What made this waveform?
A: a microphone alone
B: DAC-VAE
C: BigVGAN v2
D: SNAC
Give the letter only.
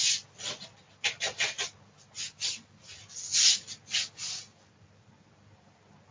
A